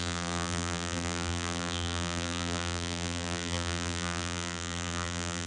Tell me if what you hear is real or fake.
fake